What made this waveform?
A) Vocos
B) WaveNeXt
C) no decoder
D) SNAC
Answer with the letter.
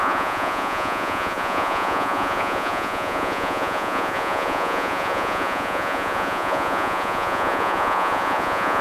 A